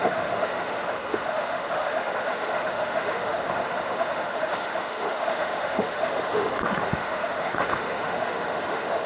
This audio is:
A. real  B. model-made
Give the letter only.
B